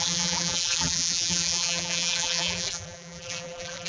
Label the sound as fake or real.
fake